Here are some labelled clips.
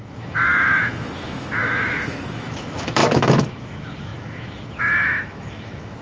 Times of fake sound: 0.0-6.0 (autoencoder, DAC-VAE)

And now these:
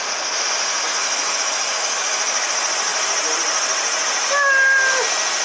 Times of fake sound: 1.0-2.5 (autoencoder, DAC-VAE)

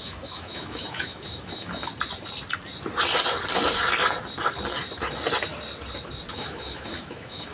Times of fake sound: 0.0-1.9 (autoencoder, DAC-VAE); 6.3-7.5

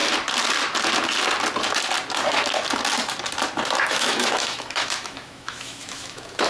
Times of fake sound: 3.9-6.5 (autoencoder, DAC-VAE)

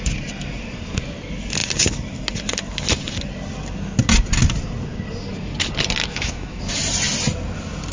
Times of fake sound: 6.0-6.6 (autoencoder, DAC-VAE)